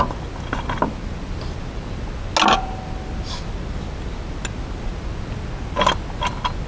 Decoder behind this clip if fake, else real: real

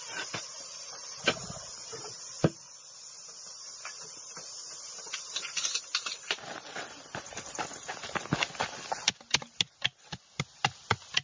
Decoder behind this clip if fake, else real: real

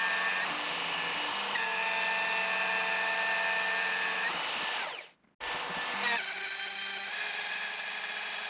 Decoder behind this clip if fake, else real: real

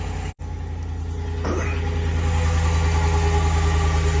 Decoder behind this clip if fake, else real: real